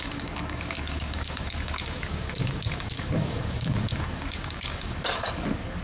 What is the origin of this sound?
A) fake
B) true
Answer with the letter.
A